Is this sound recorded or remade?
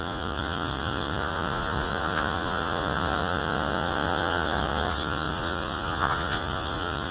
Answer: remade